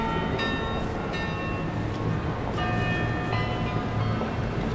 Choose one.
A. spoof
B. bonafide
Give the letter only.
B